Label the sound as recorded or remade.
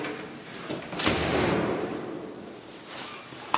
recorded